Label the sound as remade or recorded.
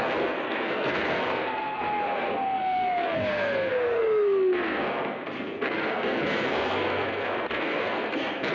remade